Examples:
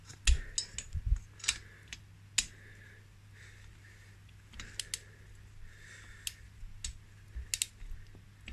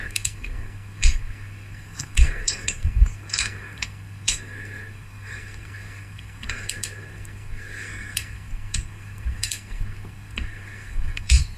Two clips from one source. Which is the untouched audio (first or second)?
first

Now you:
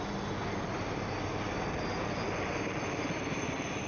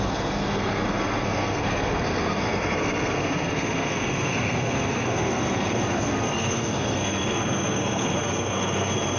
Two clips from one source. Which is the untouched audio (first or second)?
first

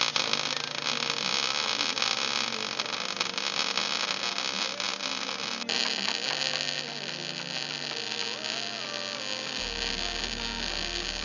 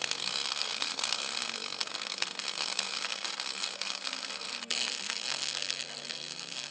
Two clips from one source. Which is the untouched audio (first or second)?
first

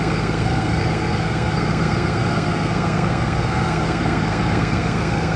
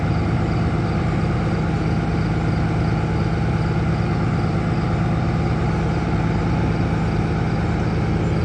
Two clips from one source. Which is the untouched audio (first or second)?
second